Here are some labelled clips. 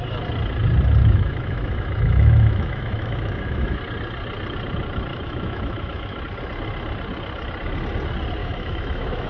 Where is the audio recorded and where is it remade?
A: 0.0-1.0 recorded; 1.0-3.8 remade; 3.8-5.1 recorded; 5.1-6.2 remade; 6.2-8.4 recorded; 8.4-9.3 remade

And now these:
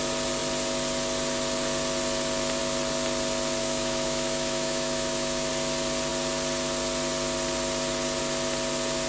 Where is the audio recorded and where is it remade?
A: 0.0-3.6 recorded; 3.6-5.5 remade; 5.5-9.1 recorded

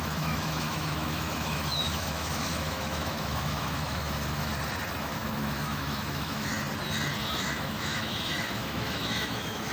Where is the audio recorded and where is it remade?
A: 0.0-4.5 remade; 4.5-5.0 recorded; 5.0-6.5 remade; 6.5-7.3 recorded; 7.3-9.7 remade